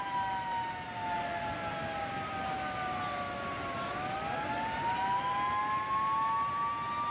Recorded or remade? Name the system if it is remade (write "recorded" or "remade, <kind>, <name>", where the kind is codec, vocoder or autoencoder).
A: recorded